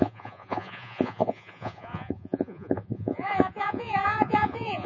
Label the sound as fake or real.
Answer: fake